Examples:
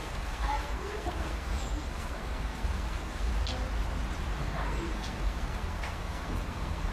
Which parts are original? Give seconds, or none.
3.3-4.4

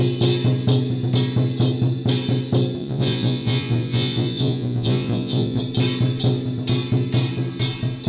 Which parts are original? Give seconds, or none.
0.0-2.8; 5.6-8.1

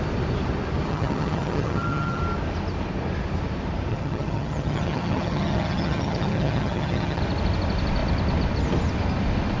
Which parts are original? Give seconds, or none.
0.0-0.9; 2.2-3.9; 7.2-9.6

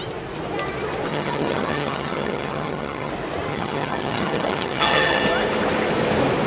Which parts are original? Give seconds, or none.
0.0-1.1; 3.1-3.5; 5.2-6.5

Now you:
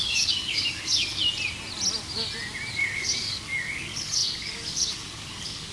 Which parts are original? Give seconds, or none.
1.2-2.7